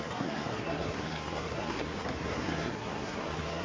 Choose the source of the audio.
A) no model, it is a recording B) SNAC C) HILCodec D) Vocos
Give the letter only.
B